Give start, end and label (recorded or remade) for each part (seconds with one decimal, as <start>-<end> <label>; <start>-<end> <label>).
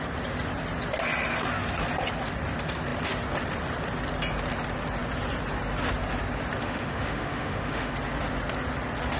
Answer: 0.0-6.6 recorded; 6.6-7.9 remade; 7.9-9.2 recorded